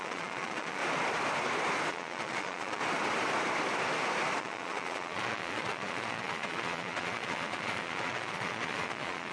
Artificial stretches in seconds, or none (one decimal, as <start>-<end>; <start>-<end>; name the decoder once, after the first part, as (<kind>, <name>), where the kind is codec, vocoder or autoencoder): 0.0-0.8 (vocoder, Vocos); 1.9-2.8; 4.4-9.3